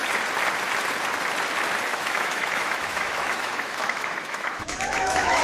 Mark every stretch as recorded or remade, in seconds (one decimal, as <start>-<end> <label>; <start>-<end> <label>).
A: 0.0-1.9 recorded; 1.9-5.4 remade